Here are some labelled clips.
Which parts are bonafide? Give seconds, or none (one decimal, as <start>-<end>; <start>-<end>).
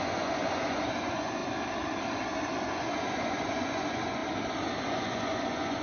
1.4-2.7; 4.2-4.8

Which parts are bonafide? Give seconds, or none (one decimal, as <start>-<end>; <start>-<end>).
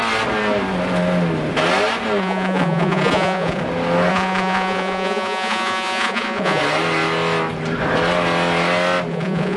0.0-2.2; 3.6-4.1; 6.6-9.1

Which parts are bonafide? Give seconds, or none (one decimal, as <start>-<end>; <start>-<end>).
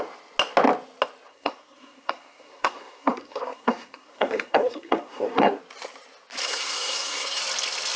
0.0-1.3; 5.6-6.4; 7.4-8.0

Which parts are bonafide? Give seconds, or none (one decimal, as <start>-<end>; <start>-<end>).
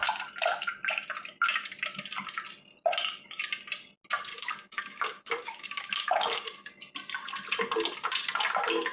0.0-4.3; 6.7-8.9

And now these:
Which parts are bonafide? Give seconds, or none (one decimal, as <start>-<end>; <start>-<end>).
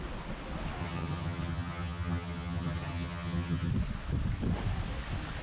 0.0-0.8; 3.7-5.4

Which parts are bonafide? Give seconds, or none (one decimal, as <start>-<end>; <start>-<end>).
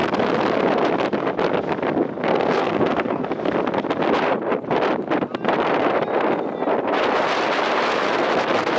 0.0-2.3; 3.2-8.8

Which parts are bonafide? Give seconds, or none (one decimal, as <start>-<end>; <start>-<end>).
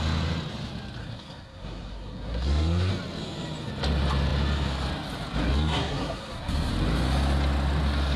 0.0-1.0; 2.9-5.4; 6.7-8.2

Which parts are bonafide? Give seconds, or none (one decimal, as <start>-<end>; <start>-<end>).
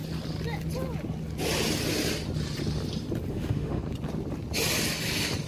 0.0-3.3; 3.8-5.5